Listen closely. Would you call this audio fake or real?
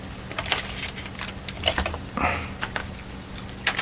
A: real